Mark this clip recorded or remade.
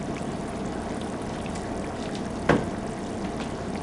recorded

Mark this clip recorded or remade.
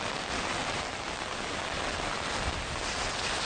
recorded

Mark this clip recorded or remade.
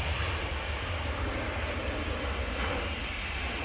recorded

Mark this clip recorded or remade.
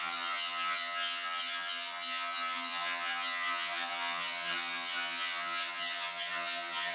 remade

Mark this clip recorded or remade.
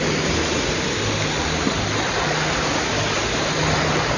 recorded